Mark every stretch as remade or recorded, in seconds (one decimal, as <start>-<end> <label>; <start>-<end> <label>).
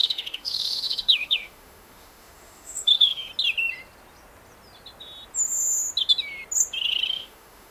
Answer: 0.0-3.3 remade; 3.3-7.1 recorded; 7.1-7.7 remade